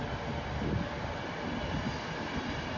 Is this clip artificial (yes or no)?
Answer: no